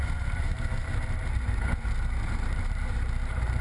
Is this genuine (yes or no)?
no